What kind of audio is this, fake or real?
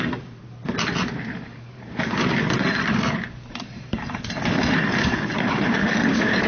fake